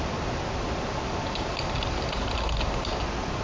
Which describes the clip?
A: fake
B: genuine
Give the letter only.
B